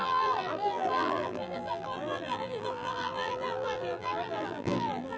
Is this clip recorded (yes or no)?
no